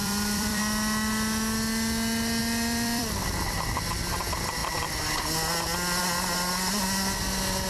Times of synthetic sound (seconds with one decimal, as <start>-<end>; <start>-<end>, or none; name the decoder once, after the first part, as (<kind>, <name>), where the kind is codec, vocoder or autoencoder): 0.0-0.6 (vocoder, BigVGAN v2); 2.4-3.2